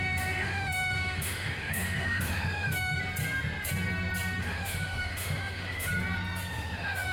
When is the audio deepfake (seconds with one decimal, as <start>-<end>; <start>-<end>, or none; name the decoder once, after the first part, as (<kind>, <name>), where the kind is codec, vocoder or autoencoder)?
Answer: 0.0-3.0 (autoencoder, DAC-VAE); 4.4-5.9; 6.5-7.1